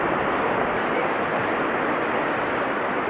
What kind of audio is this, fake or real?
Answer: real